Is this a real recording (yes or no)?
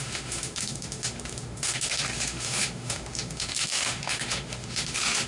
no